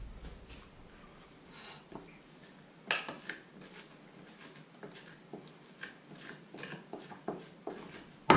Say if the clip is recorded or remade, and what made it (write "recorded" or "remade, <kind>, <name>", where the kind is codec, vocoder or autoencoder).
recorded